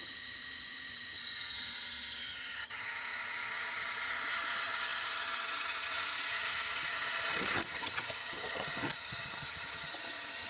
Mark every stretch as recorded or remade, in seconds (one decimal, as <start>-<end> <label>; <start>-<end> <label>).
0.0-10.5 remade

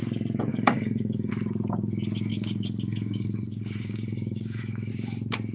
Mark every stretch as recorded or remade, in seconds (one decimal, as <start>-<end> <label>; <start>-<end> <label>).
0.0-0.5 recorded; 0.5-1.3 remade; 1.3-2.3 recorded; 2.3-4.9 remade; 4.9-5.5 recorded